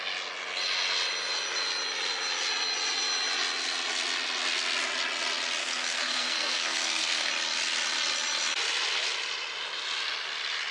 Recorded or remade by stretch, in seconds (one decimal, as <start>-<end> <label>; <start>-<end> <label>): 0.0-5.6 recorded; 5.6-7.3 remade; 7.3-10.7 recorded